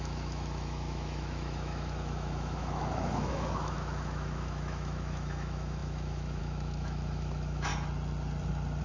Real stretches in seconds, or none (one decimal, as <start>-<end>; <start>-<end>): 7.7-8.8